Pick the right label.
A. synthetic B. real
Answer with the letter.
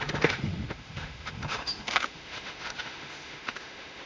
A